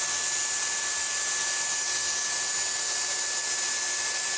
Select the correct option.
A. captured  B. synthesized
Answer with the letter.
A